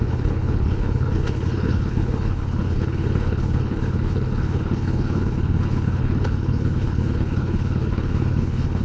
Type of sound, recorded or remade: remade